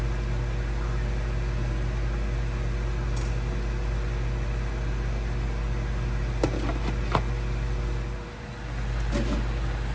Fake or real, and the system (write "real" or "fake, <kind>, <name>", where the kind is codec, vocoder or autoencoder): real